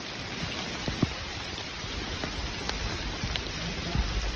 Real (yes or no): yes